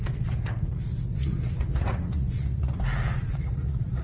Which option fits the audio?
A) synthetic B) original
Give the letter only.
A